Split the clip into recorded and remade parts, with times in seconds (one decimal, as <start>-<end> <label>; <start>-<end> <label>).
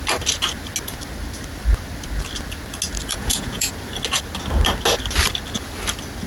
0.0-3.1 recorded; 3.1-3.7 remade; 3.7-6.3 recorded